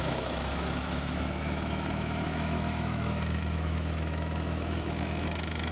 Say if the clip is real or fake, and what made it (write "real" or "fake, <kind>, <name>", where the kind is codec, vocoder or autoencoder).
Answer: fake, autoencoder, DAC-VAE